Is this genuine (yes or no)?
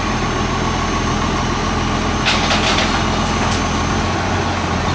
yes